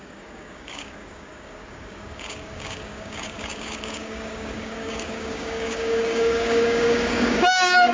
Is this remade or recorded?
remade